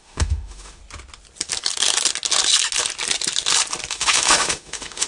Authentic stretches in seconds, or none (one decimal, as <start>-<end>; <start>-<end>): 0.8-3.9